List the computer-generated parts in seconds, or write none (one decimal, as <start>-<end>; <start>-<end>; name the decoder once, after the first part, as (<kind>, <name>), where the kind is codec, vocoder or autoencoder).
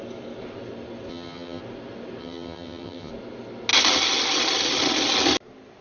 1.1-1.6 (vocoder, HiFi-GAN); 2.2-3.1